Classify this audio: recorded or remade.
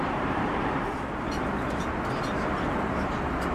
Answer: remade